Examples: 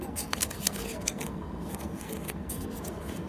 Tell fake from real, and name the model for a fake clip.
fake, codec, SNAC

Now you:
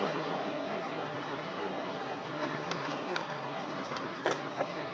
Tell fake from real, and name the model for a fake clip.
fake, codec, SNAC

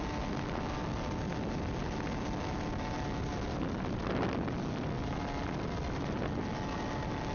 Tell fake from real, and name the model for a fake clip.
real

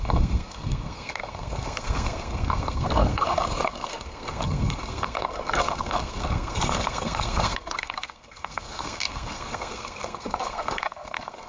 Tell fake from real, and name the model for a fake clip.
fake, codec, SNAC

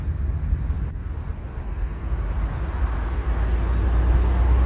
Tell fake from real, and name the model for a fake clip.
real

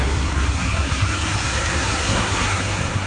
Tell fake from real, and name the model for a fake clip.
fake, codec, SNAC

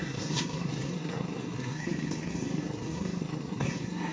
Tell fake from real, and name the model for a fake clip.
fake, codec, SNAC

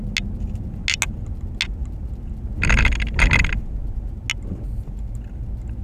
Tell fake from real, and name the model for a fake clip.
real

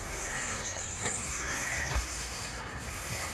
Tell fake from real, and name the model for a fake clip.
fake, codec, SNAC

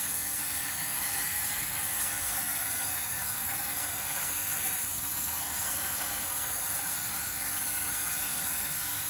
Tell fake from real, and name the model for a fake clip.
fake, codec, SNAC